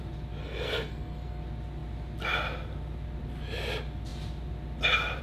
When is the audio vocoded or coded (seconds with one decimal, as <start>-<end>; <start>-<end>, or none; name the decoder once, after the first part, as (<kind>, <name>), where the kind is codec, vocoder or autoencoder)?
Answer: 0.4-1.4 (codec, SNAC)